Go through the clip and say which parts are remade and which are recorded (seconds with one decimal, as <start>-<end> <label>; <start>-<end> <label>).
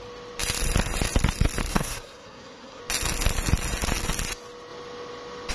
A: 0.0-1.7 recorded; 1.7-2.8 remade; 2.8-5.5 recorded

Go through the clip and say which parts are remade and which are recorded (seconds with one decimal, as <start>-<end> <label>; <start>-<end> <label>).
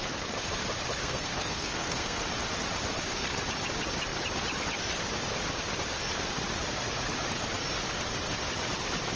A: 0.0-1.0 recorded; 1.0-2.2 remade; 2.2-9.2 recorded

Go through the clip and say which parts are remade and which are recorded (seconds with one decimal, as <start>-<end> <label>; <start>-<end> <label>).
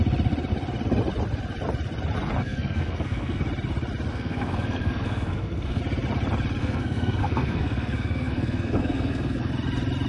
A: 0.0-2.4 recorded; 2.4-3.4 remade; 3.4-4.1 recorded; 4.1-5.8 remade; 5.8-6.6 recorded; 6.6-9.5 remade; 9.5-10.1 recorded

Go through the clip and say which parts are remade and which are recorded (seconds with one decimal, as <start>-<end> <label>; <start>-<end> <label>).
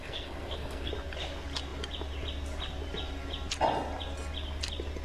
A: 0.0-0.9 remade; 0.9-5.0 recorded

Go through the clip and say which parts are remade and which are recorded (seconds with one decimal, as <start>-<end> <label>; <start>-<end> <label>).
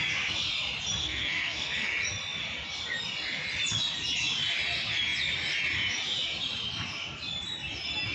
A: 0.0-1.0 recorded; 1.0-1.9 remade; 1.9-8.1 recorded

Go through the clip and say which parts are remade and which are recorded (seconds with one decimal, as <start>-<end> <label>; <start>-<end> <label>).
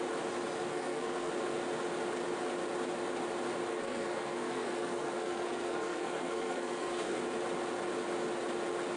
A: 0.0-0.7 recorded; 0.7-1.3 remade; 1.3-3.7 recorded; 3.7-7.2 remade; 7.2-9.0 recorded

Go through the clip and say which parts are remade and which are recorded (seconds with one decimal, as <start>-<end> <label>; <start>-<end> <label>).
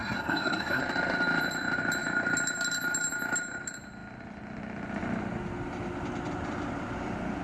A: 0.0-0.8 remade; 0.8-7.4 recorded